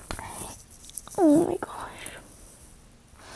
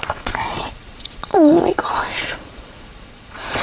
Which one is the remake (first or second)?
second